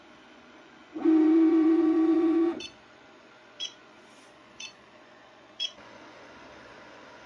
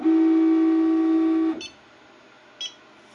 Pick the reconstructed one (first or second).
first